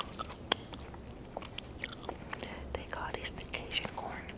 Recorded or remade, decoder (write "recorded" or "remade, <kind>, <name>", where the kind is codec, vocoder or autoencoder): recorded